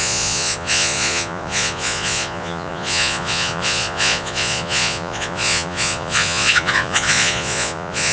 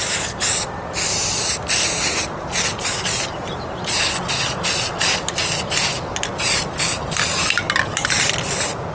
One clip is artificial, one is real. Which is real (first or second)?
second